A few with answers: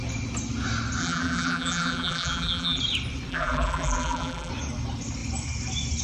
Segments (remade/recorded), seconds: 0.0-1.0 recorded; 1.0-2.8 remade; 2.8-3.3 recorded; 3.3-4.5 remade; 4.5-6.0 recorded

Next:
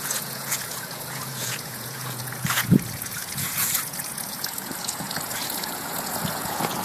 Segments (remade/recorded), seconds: 0.0-6.8 remade

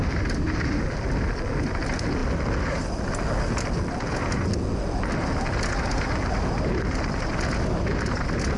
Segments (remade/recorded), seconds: 0.0-8.6 recorded

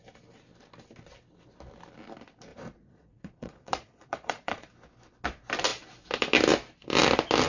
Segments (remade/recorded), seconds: 0.0-2.5 recorded; 2.5-4.7 remade; 4.7-7.5 recorded